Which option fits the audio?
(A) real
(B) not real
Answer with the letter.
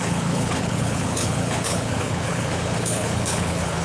B